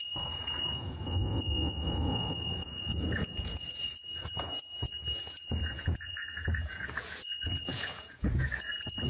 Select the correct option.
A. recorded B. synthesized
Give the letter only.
B